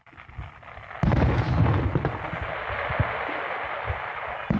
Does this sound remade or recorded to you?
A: recorded